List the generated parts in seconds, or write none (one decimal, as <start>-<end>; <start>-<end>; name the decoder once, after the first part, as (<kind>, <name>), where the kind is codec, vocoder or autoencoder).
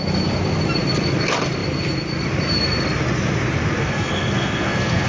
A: 3.8-5.1 (codec, SNAC)